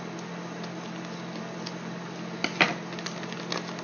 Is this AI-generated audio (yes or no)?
no